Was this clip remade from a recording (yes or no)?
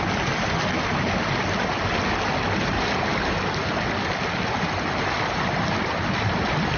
no